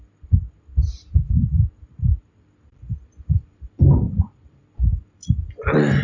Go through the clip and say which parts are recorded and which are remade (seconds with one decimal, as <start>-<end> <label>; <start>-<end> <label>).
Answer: 0.0-0.8 recorded; 0.8-1.3 remade; 1.3-2.7 recorded; 2.7-5.4 remade; 5.4-6.0 recorded